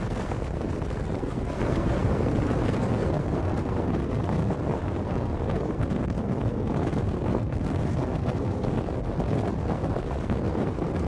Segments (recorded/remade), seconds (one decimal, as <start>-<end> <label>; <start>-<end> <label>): 0.0-11.1 remade